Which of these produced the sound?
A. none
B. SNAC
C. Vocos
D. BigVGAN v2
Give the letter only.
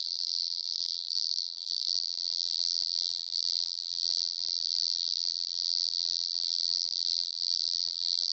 D